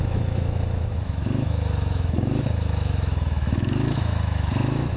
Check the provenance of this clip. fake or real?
fake